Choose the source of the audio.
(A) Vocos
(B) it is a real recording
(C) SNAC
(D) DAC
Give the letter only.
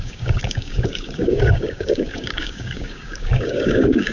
D